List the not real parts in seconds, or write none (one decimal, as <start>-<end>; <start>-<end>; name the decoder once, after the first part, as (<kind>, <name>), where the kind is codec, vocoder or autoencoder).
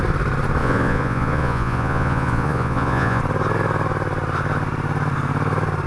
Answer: 0.6-3.2 (vocoder, Vocos)